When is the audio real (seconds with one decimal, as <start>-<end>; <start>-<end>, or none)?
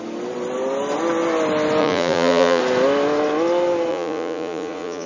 0.0-1.8; 2.6-3.9